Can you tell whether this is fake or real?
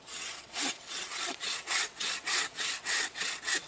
fake